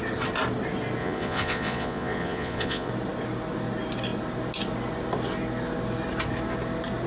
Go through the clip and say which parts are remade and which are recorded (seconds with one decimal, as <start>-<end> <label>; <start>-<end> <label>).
0.0-1.0 recorded; 1.0-2.9 remade; 2.9-7.1 recorded